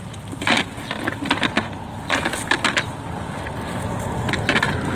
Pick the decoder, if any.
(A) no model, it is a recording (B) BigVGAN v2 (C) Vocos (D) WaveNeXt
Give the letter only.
A